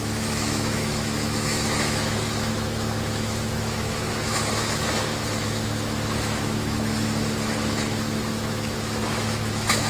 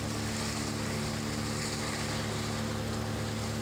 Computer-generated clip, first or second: first